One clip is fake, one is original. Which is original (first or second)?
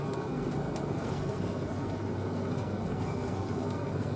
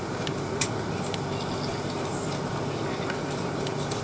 second